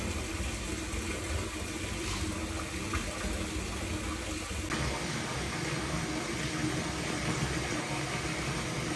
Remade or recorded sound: recorded